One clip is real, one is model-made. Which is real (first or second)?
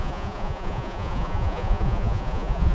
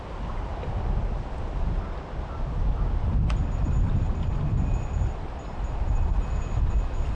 second